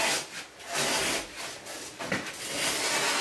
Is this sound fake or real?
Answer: real